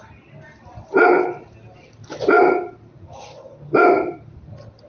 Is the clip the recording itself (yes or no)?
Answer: yes